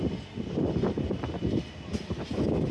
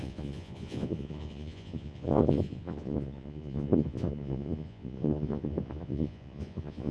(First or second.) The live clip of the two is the first